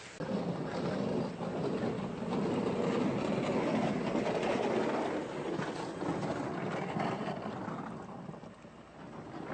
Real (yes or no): yes